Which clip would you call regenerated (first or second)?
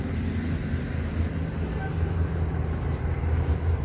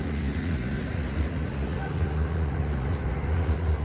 second